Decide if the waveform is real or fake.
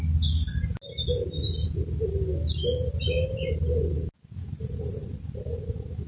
real